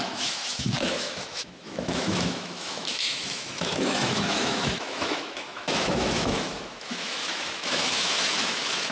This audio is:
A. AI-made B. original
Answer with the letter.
A